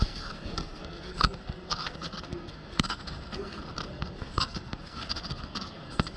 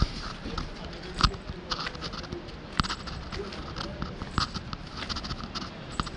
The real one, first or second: second